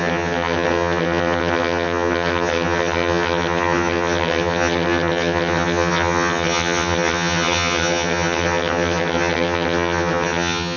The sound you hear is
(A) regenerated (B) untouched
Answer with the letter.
A